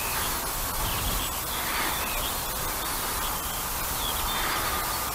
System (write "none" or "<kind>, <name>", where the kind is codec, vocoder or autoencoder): none